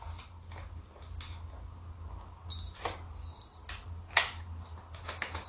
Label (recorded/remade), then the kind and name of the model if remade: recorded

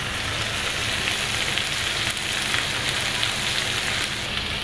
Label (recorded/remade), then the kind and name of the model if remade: recorded